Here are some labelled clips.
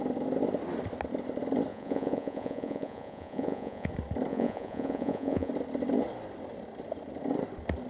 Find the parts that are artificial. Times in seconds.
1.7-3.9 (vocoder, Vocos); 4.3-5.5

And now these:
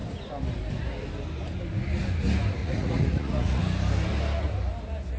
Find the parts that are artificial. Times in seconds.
2.6-3.6 (vocoder, Vocos)

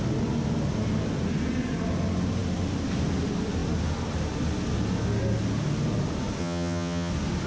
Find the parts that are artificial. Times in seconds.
6.4-7.1 (vocoder, HiFi-GAN)

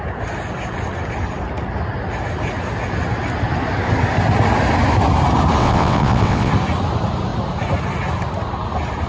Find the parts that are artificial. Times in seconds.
5.6-6.5 (vocoder, WaveNeXt)

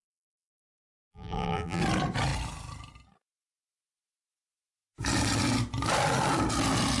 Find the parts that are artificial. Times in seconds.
0.0-1.8 (vocoder, BigVGAN v2)

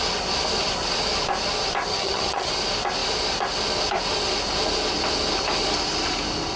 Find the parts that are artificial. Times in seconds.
1.9-2.5 (vocoder, HiFi-GAN)

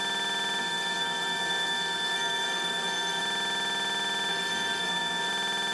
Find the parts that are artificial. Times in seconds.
0.6-3.2 (codec, SNAC); 4.3-5.3

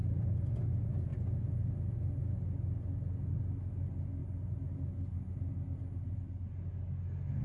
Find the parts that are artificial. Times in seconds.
none